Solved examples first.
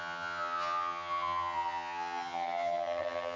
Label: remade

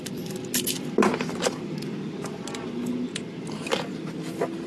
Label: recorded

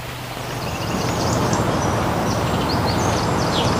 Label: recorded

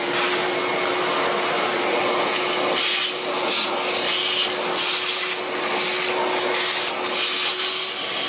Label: recorded